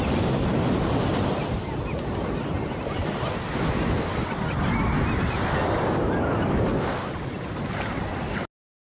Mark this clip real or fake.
real